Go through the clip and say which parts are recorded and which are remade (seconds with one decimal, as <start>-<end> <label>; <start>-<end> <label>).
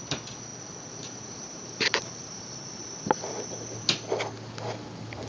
0.0-0.5 recorded; 0.5-3.0 remade; 3.0-5.3 recorded